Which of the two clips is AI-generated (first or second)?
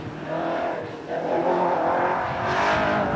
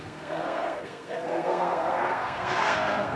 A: second